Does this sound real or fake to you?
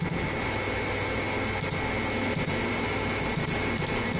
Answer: real